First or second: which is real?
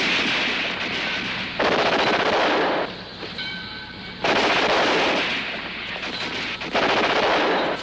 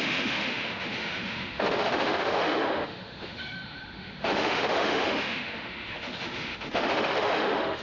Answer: first